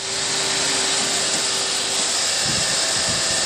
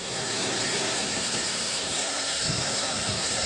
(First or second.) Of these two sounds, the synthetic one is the second